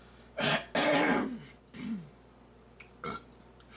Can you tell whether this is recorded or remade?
recorded